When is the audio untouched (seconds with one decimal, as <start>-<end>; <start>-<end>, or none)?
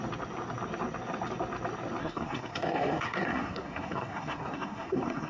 0.0-2.0